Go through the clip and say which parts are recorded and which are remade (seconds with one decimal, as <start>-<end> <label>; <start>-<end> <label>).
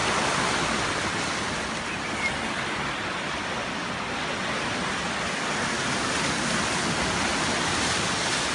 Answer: 0.0-8.5 recorded